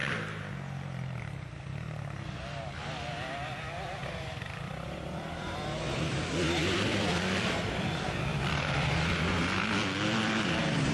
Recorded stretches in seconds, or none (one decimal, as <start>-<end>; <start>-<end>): 0.0-4.0; 7.5-8.3; 9.1-10.9